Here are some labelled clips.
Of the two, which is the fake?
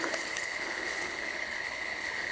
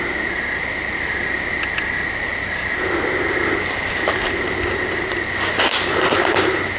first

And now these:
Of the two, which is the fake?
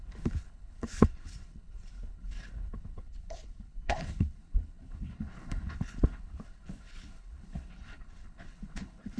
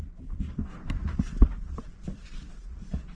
first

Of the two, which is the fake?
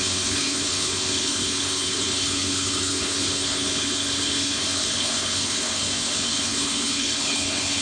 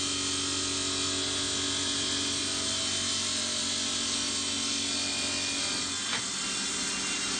first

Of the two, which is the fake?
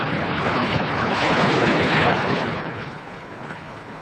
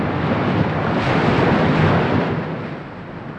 first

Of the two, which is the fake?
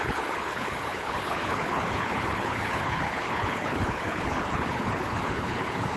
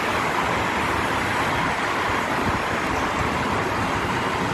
first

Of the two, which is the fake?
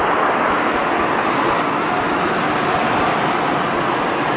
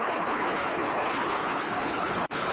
second